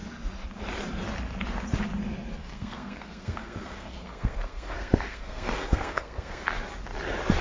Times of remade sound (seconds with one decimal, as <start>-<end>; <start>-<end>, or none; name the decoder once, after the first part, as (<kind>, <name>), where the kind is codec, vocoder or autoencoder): 2.4-6.5 (codec, SNAC)

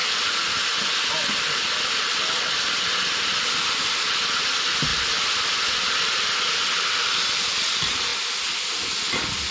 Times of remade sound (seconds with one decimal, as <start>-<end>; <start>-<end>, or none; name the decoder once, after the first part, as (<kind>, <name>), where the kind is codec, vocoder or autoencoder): none

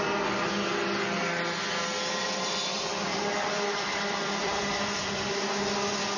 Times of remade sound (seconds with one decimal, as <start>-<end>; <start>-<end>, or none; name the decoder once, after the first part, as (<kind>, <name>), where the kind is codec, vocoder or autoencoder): 2.2-4.6 (vocoder, BigVGAN v2)

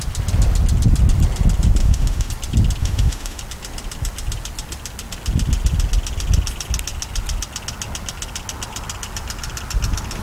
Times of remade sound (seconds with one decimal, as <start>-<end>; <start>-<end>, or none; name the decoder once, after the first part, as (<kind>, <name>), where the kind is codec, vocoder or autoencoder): 1.8-2.3 (autoencoder, DAC-VAE); 2.8-3.4

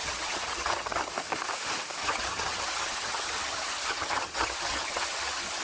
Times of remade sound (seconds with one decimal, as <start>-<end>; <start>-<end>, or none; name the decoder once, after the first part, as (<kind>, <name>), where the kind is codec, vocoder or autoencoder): 0.0-1.1 (vocoder, HiFi-GAN); 2.0-5.6